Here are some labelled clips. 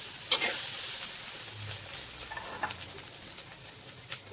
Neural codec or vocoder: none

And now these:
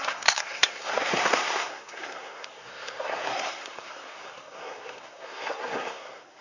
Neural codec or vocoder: codec, SNAC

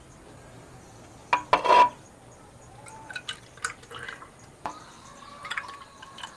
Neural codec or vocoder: none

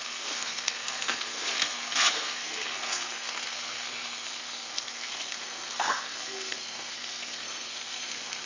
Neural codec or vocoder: codec, SNAC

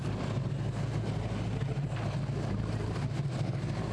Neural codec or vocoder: none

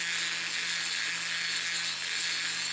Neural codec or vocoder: none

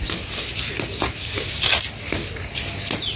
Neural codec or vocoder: none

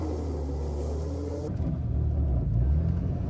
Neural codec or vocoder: none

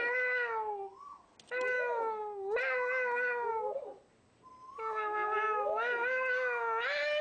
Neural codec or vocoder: none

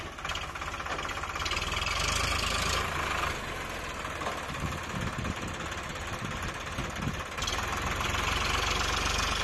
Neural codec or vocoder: none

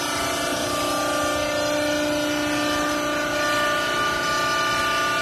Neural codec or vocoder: none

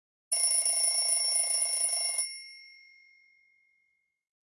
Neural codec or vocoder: none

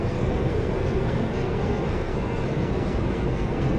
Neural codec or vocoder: codec, SNAC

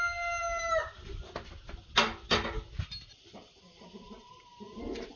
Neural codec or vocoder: none